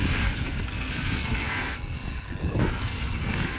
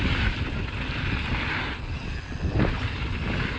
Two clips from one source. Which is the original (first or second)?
second